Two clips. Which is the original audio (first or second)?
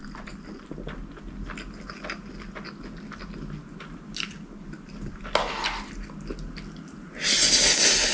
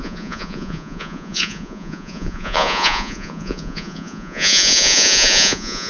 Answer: first